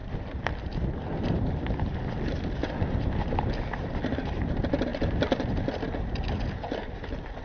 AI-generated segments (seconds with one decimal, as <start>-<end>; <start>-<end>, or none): none

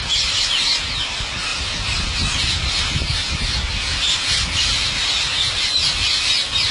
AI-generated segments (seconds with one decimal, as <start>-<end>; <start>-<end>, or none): 1.5-2.8

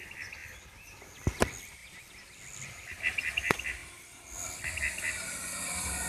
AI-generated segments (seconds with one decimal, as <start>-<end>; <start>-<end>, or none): none

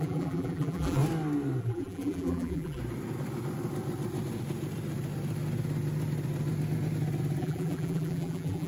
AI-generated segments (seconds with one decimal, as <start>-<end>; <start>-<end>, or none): 0.0-1.0; 1.6-2.8; 7.4-8.7